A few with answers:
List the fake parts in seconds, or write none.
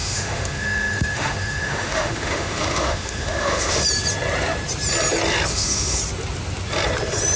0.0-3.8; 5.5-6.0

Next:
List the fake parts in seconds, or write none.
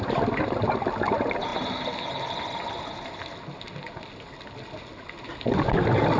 none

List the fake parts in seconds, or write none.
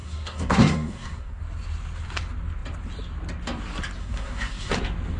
0.0-1.4; 4.0-4.7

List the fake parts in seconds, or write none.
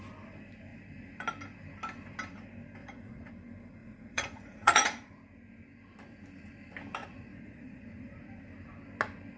2.8-3.3; 3.8-5.1; 7.0-8.3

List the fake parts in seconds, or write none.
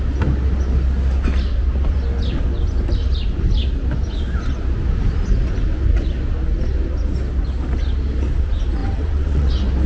8.8-9.5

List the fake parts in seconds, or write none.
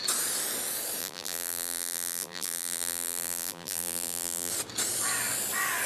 1.0-4.5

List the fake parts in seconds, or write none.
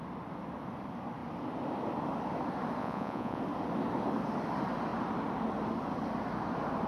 2.8-3.4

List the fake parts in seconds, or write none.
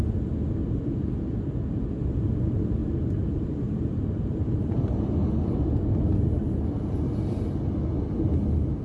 2.8-5.0